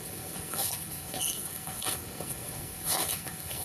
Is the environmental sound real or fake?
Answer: fake